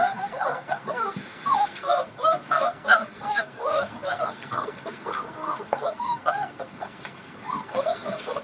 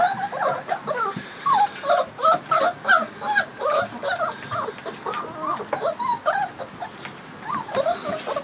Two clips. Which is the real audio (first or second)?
second